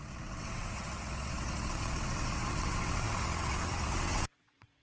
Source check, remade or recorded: remade